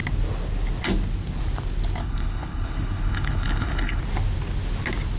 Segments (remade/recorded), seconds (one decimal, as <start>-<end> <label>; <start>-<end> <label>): 0.0-2.0 recorded; 2.0-4.0 remade; 4.0-5.2 recorded